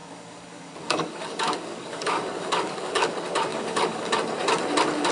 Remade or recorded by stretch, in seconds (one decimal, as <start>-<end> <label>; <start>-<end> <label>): 0.0-3.1 remade; 3.1-3.5 recorded; 3.5-4.1 remade; 4.1-5.1 recorded